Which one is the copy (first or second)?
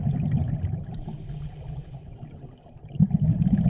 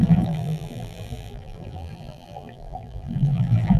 second